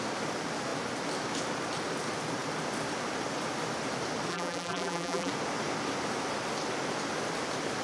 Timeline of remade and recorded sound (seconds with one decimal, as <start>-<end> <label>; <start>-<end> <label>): 0.0-4.3 recorded; 4.3-5.3 remade; 5.3-7.8 recorded